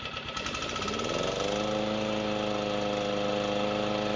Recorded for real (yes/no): yes